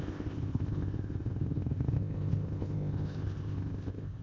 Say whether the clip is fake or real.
fake